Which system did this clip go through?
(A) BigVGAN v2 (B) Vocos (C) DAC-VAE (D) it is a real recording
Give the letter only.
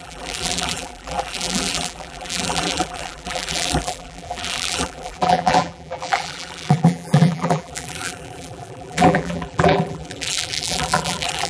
A